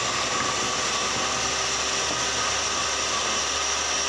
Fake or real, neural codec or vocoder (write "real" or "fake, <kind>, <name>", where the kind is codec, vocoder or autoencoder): real